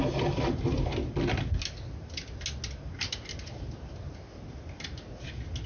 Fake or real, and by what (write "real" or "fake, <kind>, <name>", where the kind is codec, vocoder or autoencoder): real